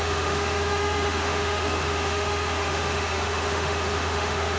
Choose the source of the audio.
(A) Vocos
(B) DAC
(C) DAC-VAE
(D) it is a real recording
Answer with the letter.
C